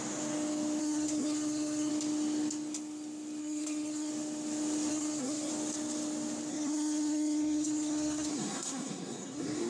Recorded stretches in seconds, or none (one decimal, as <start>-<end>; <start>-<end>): 0.0-0.8; 1.9-3.4; 4.1-4.9; 5.5-6.5